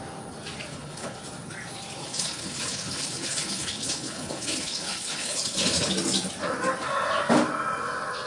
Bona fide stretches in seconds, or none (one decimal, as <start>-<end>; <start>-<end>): 0.0-0.7; 1.2-2.0; 5.9-8.3